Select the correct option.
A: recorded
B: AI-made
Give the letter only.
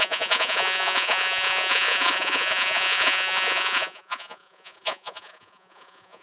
B